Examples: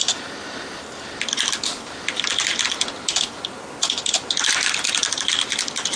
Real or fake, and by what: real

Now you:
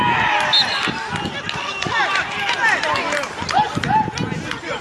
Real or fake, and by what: real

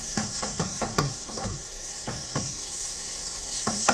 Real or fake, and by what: fake, codec, SNAC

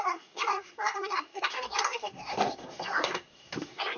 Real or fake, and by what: fake, codec, SNAC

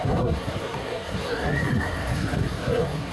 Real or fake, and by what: fake, codec, SNAC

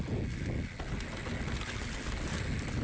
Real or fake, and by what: real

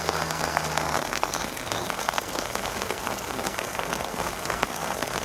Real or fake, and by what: fake, codec, SNAC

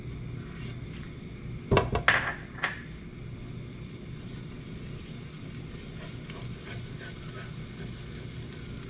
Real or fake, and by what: real